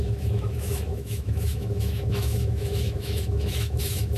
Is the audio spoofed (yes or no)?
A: yes